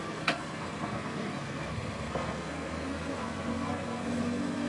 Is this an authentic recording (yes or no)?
no